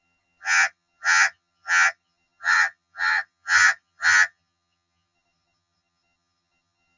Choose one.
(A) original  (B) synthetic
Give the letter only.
B